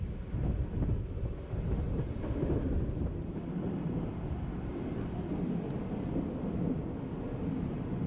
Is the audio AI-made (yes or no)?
no